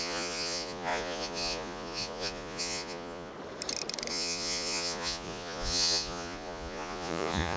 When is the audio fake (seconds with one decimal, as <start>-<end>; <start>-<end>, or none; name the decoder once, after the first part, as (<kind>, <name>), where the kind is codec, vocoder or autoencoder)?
0.0-3.3 (vocoder, Vocos); 4.1-7.6